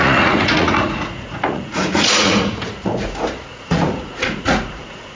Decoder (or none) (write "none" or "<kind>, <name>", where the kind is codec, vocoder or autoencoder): vocoder, Vocos